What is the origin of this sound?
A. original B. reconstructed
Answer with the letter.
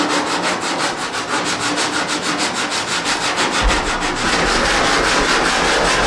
A